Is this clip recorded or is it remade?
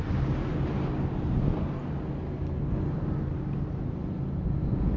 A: recorded